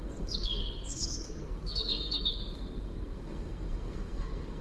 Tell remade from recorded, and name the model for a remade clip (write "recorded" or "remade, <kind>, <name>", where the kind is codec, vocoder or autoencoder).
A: remade, codec, SNAC